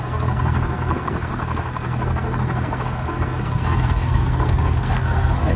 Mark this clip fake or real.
fake